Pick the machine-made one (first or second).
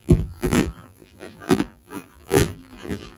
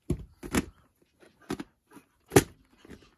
first